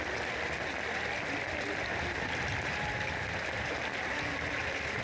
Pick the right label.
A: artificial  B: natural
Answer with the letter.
B